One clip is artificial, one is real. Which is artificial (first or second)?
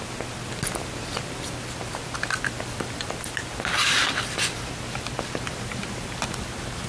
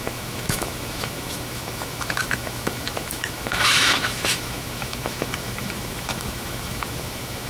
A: second